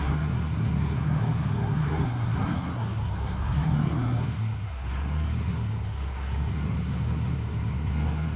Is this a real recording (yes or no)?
no